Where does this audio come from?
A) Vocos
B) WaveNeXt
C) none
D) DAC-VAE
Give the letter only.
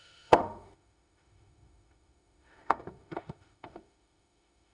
D